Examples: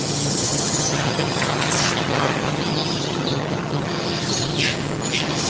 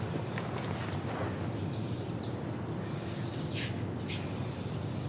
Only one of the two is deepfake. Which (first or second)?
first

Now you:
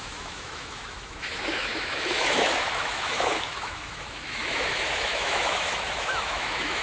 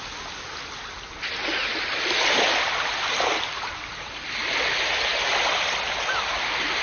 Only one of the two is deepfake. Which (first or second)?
first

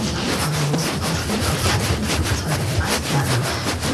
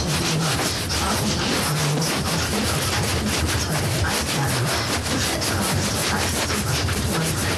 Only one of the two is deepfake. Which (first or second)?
first